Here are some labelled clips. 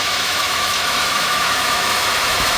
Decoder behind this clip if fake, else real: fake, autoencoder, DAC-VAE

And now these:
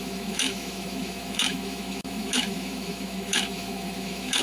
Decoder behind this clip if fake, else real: fake, autoencoder, DAC-VAE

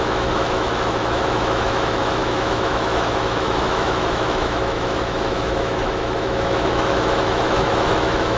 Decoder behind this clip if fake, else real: fake, autoencoder, DAC-VAE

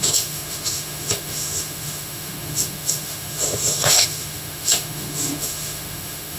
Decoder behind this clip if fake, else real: fake, autoencoder, DAC-VAE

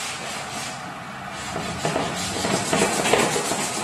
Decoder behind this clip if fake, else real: real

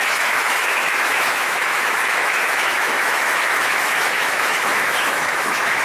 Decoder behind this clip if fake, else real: fake, autoencoder, DAC-VAE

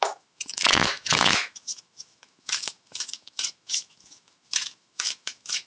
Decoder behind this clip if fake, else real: fake, autoencoder, DAC-VAE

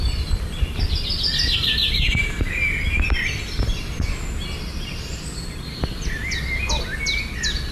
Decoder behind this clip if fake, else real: real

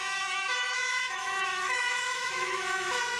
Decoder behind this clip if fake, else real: fake, autoencoder, DAC-VAE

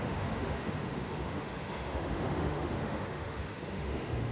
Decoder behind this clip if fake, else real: fake, autoencoder, DAC-VAE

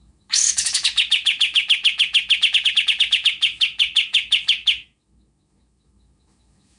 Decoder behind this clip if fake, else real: fake, autoencoder, DAC-VAE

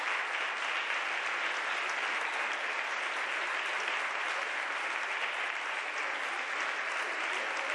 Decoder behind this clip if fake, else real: real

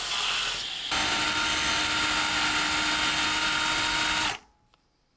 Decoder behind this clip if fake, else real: real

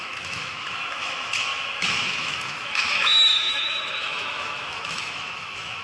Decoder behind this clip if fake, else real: fake, autoencoder, DAC-VAE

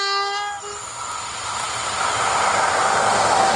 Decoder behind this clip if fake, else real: real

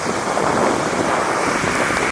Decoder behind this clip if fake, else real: real